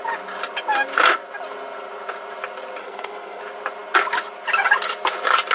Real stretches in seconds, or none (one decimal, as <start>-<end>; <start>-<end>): 0.0-2.8; 3.4-5.5

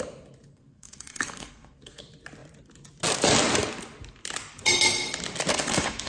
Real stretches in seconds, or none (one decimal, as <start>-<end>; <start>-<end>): 0.0-0.5; 2.0-5.5

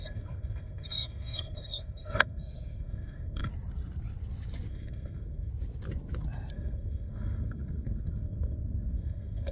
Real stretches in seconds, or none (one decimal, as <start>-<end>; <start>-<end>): 3.5-4.7; 5.5-6.5